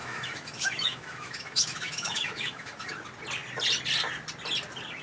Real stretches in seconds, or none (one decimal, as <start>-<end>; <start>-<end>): 2.9-5.0